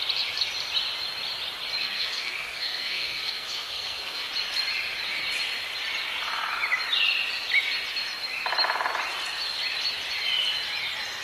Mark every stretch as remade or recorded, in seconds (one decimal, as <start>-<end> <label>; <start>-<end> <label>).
0.0-1.8 recorded; 1.8-4.3 remade; 4.3-11.2 recorded